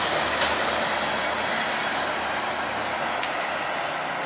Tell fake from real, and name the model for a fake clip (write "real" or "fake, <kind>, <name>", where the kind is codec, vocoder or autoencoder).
real